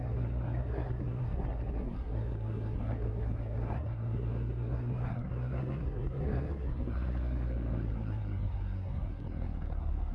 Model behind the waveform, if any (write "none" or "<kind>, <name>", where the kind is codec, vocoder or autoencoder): codec, SNAC